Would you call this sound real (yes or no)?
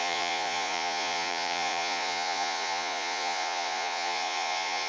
no